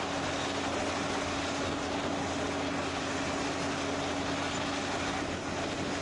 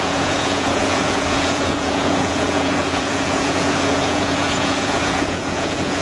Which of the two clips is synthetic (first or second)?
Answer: second